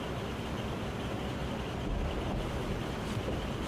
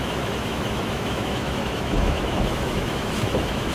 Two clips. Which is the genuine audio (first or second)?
first